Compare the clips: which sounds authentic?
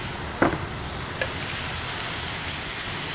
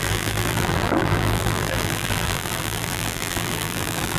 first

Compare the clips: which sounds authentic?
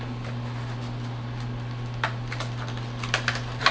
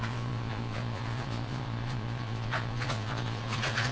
first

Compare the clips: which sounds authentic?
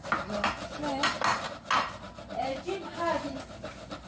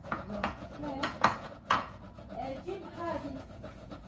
first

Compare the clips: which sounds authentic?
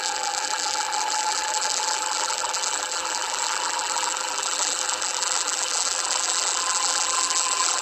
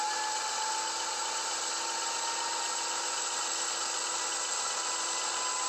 second